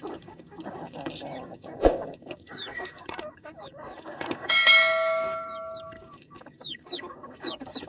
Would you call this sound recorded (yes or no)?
no